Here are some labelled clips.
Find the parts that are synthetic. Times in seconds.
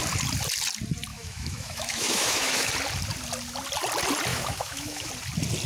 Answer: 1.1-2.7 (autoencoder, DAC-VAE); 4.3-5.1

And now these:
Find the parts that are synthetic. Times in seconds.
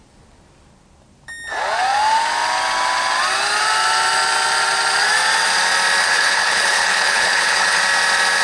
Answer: 6.0-7.8 (codec, HILCodec)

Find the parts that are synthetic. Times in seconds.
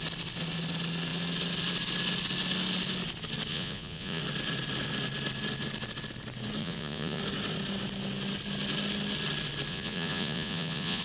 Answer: 3.5-4.2 (vocoder, Vocos); 6.6-7.2; 9.7-11.0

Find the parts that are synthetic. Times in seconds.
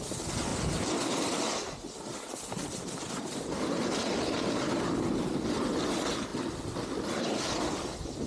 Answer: 0.5-5.5 (vocoder, BigVGAN v2); 6.3-7.5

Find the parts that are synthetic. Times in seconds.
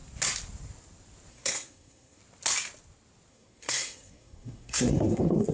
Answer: 1.3-2.2 (codec, SNAC); 3.3-5.5